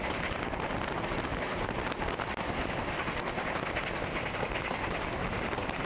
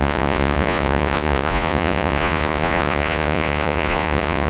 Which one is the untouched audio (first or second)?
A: first